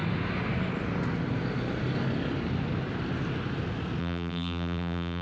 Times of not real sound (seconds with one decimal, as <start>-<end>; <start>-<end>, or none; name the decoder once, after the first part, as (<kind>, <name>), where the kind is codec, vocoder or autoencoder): 4.0-5.2 (vocoder, BigVGAN v2)